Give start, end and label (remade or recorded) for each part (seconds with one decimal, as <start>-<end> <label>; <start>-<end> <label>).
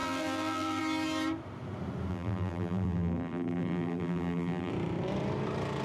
0.0-0.8 remade; 0.8-2.1 recorded; 2.1-4.7 remade; 4.7-5.8 recorded